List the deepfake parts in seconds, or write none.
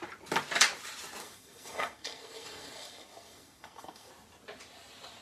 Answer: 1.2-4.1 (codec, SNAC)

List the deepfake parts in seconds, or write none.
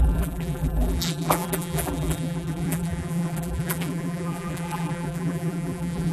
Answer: 0.0-6.1 (vocoder, BigVGAN v2)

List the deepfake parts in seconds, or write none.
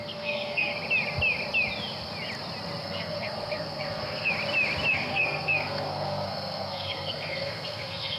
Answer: 0.0-0.7 (codec, SNAC); 2.8-4.3; 4.9-8.2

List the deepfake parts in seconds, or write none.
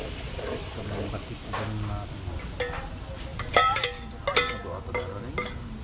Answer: none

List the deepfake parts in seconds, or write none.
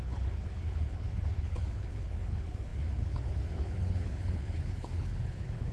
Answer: 0.0-5.7 (codec, HILCodec)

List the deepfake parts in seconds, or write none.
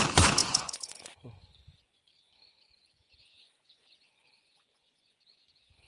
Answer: 0.0-5.9 (vocoder, Vocos)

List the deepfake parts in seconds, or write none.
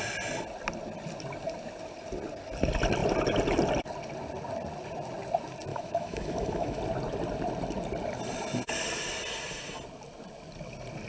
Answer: 5.7-6.8 (autoencoder, DAC-VAE)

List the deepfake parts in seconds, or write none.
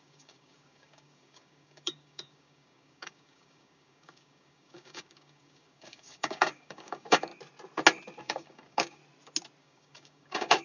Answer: 0.0-7.3 (codec, DAC); 8.2-9.0; 9.6-10.6